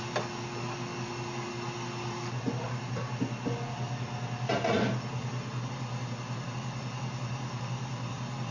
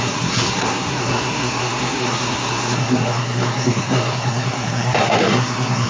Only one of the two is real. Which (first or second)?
first